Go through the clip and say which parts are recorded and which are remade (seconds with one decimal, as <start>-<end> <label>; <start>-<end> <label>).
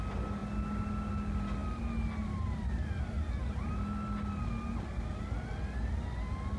0.0-6.6 recorded